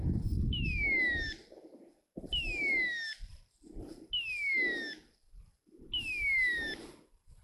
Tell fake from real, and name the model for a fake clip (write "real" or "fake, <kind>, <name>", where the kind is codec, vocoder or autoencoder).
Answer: real